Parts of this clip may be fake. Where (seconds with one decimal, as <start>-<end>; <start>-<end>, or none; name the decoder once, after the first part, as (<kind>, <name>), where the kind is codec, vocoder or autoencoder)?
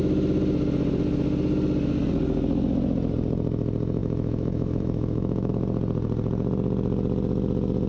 4.0-5.5 (autoencoder, DAC-VAE)